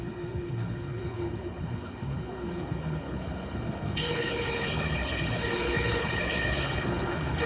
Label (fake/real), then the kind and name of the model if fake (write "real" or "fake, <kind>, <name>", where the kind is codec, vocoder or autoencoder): fake, codec, HILCodec